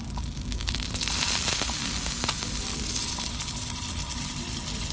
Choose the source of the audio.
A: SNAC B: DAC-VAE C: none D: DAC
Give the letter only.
C